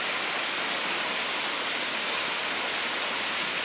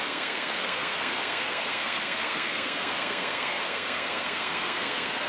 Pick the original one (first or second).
first